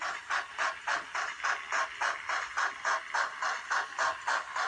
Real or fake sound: real